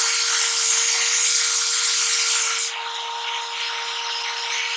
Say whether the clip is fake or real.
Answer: real